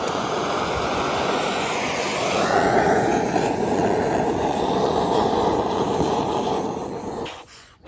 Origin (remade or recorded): remade